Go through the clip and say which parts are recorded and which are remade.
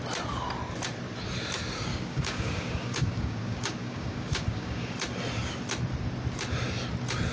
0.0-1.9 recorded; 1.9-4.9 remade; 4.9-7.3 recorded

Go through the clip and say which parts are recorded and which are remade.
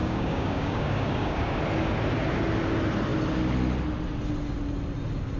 0.0-1.6 remade; 1.6-5.4 recorded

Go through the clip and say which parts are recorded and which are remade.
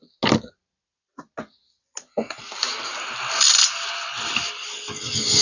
0.0-5.4 recorded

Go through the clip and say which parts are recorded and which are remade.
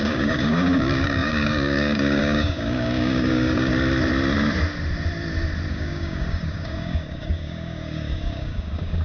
0.0-3.7 remade; 3.7-5.7 recorded; 5.7-9.0 remade